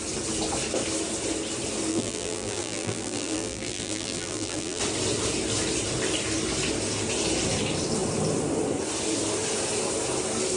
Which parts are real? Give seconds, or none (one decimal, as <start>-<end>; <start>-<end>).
0.0-1.9; 4.8-10.6